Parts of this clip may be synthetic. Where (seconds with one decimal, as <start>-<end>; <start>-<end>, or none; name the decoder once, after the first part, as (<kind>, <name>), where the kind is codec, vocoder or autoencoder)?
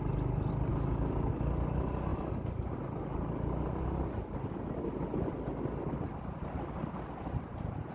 0.7-1.3 (codec, DAC)